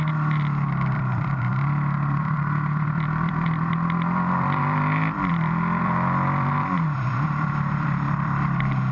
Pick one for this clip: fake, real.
fake